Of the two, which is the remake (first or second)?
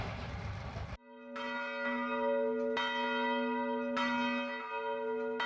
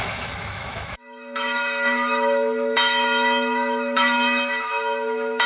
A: second